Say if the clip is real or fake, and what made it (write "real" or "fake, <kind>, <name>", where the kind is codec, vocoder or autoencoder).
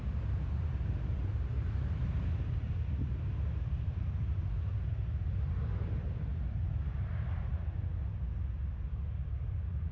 real